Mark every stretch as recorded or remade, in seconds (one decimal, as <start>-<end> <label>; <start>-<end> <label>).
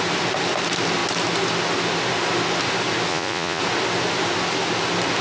0.0-3.1 recorded; 3.1-3.6 remade; 3.6-5.2 recorded